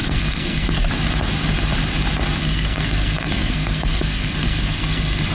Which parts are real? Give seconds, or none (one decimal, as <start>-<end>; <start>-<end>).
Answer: 0.9-2.4

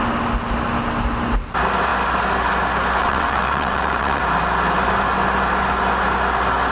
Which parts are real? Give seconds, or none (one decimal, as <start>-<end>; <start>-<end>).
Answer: 0.0-3.0; 4.2-6.7

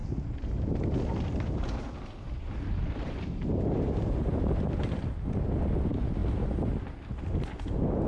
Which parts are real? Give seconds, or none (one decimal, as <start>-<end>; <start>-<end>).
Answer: 0.0-8.1